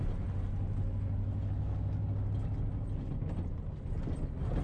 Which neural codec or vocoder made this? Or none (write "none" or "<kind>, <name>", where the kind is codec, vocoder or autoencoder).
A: none